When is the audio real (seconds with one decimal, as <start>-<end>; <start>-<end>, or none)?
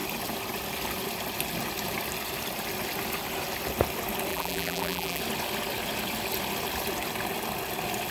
0.0-4.3; 5.2-8.1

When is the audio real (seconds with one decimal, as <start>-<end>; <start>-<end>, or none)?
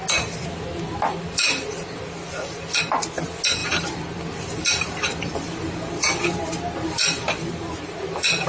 0.0-3.6